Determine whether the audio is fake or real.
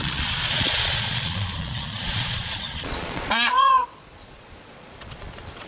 fake